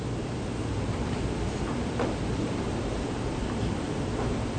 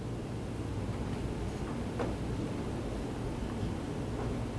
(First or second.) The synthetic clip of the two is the first